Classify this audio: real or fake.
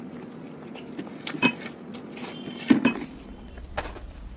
real